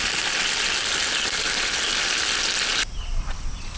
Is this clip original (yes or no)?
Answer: yes